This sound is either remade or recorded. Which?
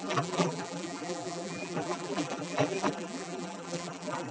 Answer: remade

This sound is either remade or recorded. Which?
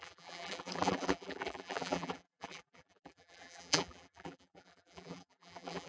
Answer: remade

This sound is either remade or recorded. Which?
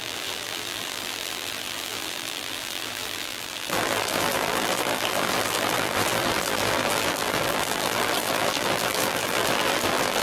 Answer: remade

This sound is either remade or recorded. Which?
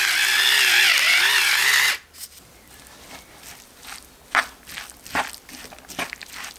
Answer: recorded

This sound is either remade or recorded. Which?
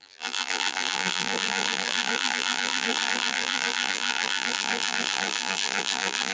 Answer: remade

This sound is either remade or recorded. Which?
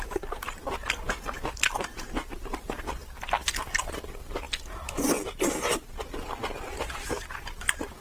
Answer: recorded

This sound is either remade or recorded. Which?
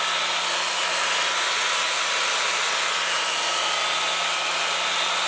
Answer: recorded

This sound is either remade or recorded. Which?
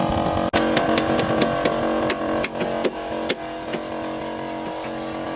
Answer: recorded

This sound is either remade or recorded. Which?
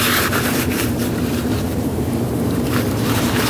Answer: remade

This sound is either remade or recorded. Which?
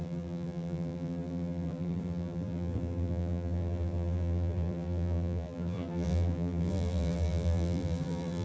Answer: remade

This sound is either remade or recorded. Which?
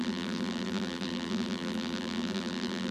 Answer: remade